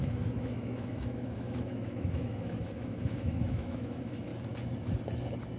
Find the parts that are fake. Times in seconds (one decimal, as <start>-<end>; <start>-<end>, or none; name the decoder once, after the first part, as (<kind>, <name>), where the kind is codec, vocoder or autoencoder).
0.0-4.3 (autoencoder, DAC-VAE)